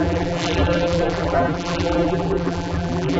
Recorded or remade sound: remade